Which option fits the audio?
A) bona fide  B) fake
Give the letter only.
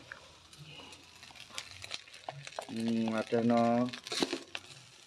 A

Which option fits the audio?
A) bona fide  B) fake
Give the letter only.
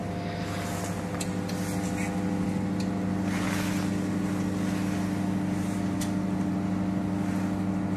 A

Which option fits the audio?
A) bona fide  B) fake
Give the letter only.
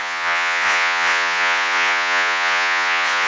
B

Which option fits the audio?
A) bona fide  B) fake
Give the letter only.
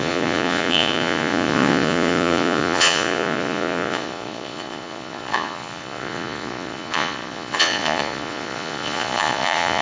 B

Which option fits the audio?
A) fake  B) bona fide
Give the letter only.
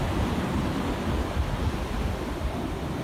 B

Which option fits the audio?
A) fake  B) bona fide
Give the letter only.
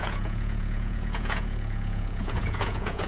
A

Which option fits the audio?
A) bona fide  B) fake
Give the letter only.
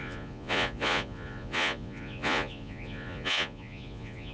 B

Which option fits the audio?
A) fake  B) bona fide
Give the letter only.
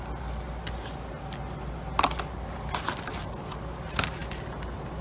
B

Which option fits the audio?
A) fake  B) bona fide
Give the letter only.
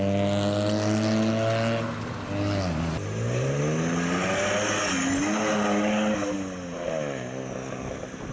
B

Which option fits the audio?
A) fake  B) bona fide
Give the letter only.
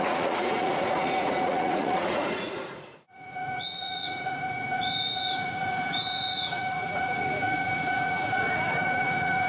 A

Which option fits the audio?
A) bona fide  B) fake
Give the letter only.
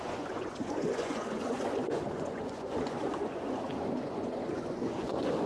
B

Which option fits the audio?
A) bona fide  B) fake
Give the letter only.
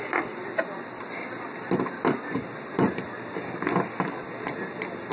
A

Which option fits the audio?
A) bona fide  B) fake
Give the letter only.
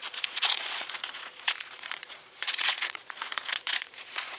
B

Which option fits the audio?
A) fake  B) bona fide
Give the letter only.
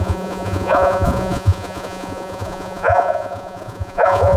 A